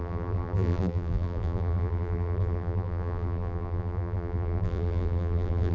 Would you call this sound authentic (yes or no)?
no